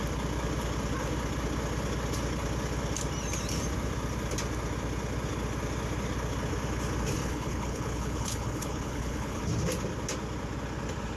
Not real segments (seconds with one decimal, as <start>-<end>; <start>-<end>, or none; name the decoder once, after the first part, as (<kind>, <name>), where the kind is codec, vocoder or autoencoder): 7.2-9.4 (codec, HILCodec)

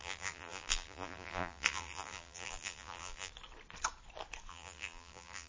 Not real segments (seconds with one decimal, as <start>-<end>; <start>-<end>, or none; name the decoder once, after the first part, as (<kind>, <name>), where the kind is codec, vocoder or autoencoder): 0.0-3.3 (vocoder, BigVGAN v2); 4.5-5.5